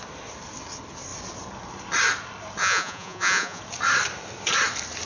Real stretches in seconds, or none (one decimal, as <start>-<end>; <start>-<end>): 0.0-2.6; 3.6-5.1